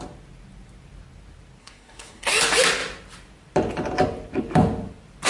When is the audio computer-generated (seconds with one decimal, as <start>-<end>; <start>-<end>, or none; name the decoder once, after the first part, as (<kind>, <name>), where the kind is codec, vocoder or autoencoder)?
1.6-2.3 (codec, SNAC)